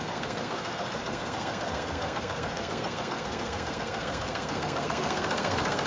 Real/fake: fake